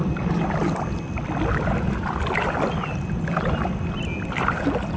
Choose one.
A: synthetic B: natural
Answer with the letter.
B